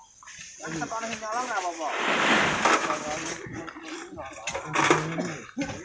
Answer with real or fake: real